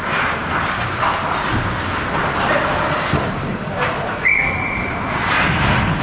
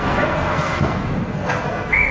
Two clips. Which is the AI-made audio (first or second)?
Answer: second